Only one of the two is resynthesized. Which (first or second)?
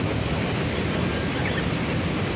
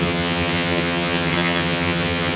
second